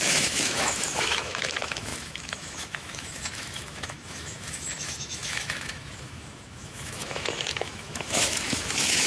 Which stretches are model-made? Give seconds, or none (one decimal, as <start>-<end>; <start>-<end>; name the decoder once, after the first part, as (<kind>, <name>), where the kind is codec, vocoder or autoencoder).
0.0-9.1 (autoencoder, DAC-VAE)